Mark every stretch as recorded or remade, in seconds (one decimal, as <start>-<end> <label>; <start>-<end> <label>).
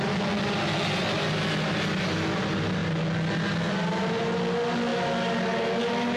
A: 0.0-6.2 recorded